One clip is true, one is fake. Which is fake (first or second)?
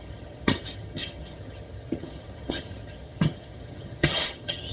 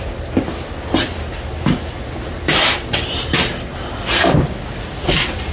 first